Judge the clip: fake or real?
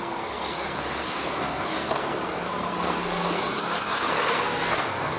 fake